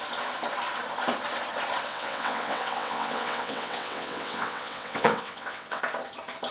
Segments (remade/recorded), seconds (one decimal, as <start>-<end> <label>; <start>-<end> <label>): 0.0-1.9 recorded; 1.9-5.8 remade; 5.8-6.5 recorded